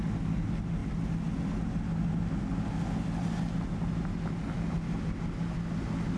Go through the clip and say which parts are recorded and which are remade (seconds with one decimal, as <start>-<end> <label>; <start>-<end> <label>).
0.0-6.2 recorded